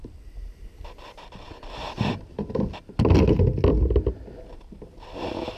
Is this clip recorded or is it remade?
recorded